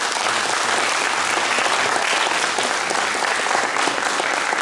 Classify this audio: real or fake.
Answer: real